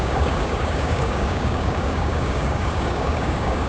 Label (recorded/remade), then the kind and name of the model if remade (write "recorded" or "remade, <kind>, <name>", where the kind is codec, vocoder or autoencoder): remade, codec, DAC